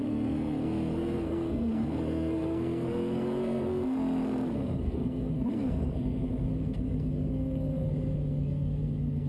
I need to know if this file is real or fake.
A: fake